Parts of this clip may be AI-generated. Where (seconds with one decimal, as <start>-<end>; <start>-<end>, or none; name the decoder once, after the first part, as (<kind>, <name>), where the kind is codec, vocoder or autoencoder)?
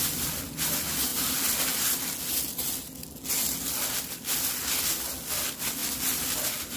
none